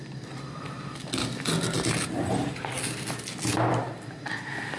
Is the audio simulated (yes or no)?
no